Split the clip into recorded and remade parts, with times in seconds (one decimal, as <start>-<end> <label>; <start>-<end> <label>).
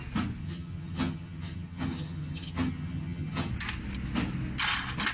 0.0-0.4 recorded; 0.4-3.5 remade; 3.5-5.1 recorded